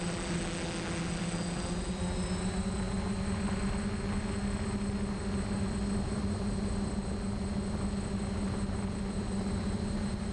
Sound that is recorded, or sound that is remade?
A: recorded